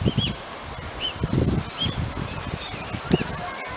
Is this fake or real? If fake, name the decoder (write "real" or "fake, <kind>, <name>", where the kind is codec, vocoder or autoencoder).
real